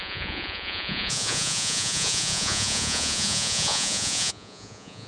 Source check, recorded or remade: remade